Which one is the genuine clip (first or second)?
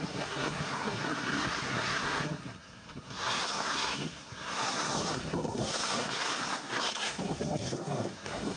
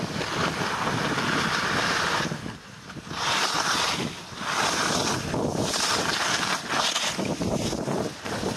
second